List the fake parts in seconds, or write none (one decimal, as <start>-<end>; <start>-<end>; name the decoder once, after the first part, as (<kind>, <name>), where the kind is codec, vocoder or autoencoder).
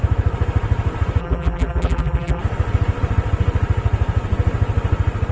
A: 1.2-2.4 (vocoder, BigVGAN v2)